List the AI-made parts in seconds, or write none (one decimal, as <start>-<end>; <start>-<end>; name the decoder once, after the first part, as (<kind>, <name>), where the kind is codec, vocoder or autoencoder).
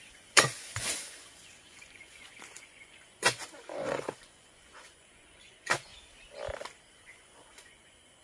0.0-5.9 (vocoder, Vocos); 6.9-8.2